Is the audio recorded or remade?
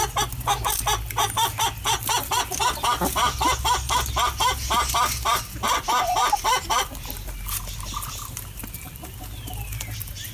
recorded